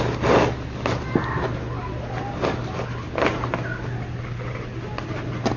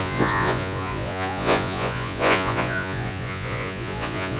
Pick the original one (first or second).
first